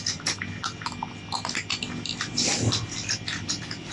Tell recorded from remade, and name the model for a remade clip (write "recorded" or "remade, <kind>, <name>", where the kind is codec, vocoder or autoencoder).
recorded